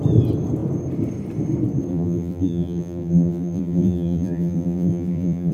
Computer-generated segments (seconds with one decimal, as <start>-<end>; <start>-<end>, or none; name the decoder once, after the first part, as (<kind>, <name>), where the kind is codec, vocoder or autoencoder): 1.9-5.5 (vocoder, BigVGAN v2)